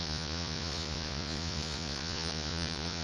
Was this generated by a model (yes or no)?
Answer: yes